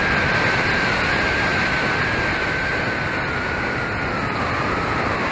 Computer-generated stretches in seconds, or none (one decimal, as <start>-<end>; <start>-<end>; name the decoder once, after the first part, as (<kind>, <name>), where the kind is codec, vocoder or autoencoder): none